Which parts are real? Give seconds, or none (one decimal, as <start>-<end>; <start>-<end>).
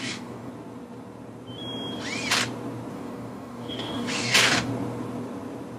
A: 0.5-2.9; 4.7-5.8